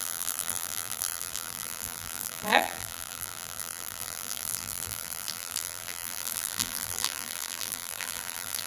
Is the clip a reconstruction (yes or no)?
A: yes